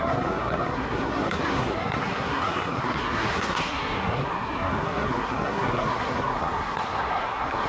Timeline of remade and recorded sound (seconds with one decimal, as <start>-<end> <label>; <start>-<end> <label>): 0.0-7.7 remade